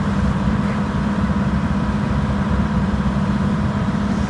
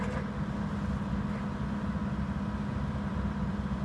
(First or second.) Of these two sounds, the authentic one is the second